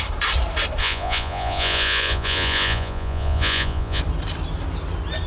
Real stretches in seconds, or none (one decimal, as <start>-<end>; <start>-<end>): 0.0-0.8; 4.0-5.3